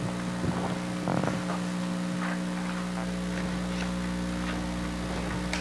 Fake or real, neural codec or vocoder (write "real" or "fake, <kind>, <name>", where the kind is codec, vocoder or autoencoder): real